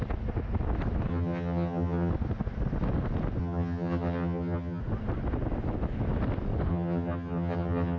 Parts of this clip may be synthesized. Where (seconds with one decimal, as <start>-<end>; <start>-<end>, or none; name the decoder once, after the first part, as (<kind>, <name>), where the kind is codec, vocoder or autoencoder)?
1.1-2.1 (vocoder, HiFi-GAN); 3.4-4.8; 6.7-8.0

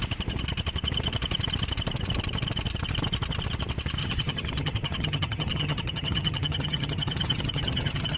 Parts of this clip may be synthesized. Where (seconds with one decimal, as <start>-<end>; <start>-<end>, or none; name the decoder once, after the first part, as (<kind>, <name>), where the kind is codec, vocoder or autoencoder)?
4.0-8.2 (vocoder, HiFi-GAN)

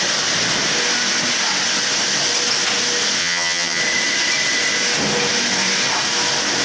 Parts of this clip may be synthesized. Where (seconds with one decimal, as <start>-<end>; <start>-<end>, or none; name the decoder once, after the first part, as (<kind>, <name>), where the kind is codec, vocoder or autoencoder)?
3.2-3.8 (vocoder, HiFi-GAN)

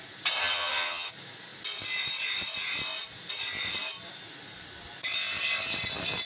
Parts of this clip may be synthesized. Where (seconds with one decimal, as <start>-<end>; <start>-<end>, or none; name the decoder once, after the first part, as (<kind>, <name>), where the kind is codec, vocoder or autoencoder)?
0.4-1.1 (vocoder, HiFi-GAN)